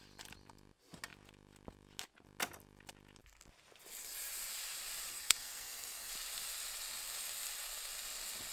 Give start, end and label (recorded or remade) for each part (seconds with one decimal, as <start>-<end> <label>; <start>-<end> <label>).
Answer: 0.0-5.1 recorded; 5.1-6.1 remade; 6.1-8.5 recorded